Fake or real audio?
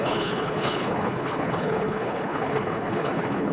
fake